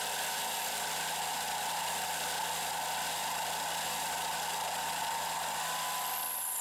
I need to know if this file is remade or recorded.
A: recorded